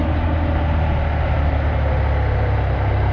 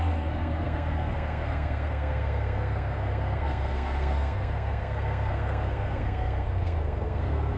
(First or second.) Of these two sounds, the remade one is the second